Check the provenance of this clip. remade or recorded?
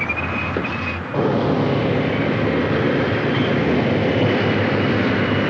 recorded